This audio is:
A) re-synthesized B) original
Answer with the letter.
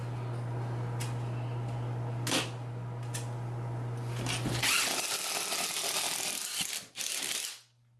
B